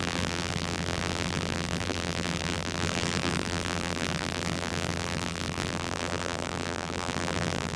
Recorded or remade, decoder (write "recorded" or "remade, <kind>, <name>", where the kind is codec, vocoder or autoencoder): remade, vocoder, BigVGAN v2